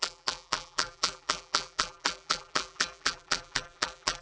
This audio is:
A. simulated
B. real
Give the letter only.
A